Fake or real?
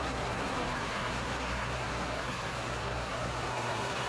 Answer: fake